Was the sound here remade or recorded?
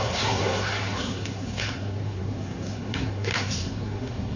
remade